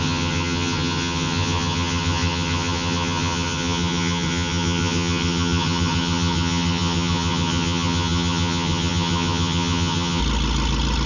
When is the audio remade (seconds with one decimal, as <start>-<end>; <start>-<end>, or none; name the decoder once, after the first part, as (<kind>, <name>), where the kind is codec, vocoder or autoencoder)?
0.0-10.2 (vocoder, HiFi-GAN)